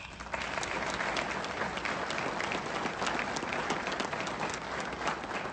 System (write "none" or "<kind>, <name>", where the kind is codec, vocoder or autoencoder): none